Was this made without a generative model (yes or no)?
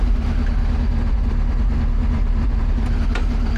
yes